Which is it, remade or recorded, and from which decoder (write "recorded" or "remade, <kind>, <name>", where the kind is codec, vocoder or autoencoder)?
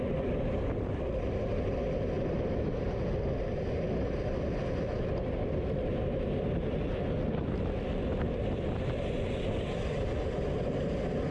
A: recorded